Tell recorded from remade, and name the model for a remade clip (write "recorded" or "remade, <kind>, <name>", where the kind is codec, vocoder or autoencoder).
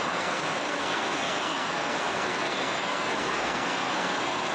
remade, codec, SNAC